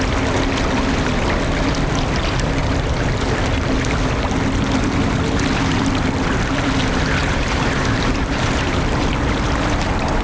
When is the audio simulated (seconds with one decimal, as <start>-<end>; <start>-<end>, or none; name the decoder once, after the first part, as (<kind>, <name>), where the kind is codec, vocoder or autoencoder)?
7.2-8.8 (vocoder, BigVGAN v2)